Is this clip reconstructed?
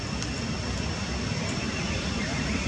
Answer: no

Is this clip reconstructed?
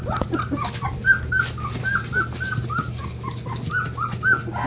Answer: no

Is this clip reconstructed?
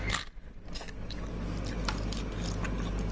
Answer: no